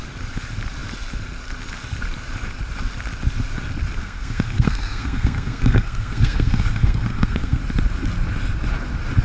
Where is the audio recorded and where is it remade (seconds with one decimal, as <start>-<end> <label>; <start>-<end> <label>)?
0.0-4.0 recorded; 4.0-7.6 remade; 7.6-9.2 recorded

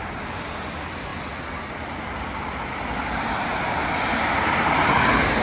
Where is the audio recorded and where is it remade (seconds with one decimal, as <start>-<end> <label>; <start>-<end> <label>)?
0.0-5.4 recorded

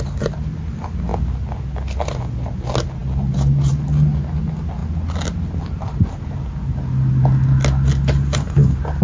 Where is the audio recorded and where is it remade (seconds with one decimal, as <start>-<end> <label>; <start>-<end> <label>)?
0.0-9.0 recorded

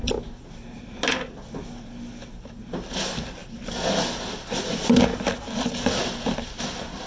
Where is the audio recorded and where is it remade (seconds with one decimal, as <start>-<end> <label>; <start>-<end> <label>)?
0.0-7.1 recorded

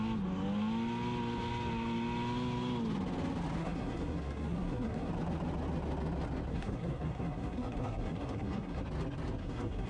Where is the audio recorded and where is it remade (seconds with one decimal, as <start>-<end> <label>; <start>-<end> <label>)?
0.0-3.6 recorded; 3.6-5.1 remade; 5.1-6.5 recorded; 6.5-8.8 remade; 8.8-9.4 recorded; 9.4-9.9 remade